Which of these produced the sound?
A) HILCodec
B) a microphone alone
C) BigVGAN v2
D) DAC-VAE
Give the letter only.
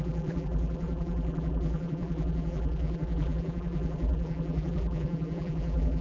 C